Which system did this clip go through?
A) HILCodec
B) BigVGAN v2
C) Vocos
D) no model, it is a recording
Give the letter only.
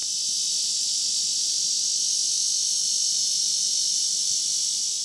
D